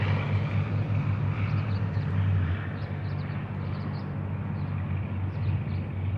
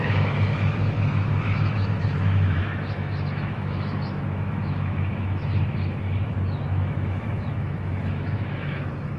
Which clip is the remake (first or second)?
second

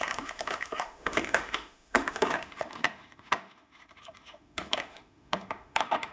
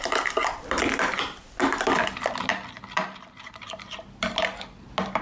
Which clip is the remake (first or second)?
first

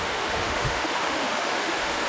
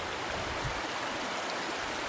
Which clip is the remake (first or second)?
first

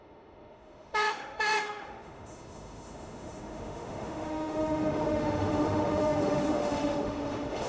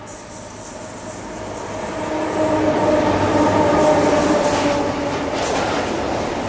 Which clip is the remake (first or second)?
first